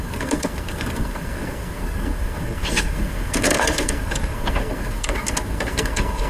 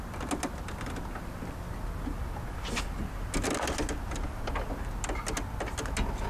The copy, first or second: first